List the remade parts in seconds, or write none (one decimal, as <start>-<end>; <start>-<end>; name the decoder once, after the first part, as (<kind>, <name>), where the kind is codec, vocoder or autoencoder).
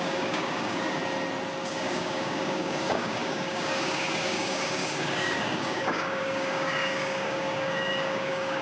0.0-1.0 (codec, DAC); 1.7-8.6